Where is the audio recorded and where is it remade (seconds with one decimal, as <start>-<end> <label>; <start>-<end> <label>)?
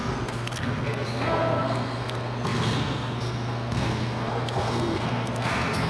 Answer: 0.0-5.9 remade